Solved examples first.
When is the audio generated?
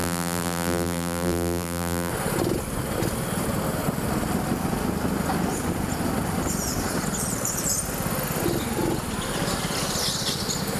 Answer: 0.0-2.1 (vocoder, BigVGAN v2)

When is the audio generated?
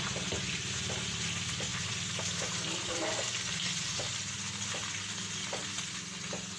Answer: none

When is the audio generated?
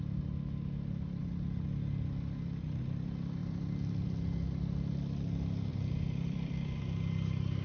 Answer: 3.4-4.1 (vocoder, BigVGAN v2); 5.7-6.8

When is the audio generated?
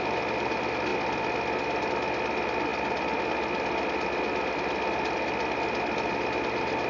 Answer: none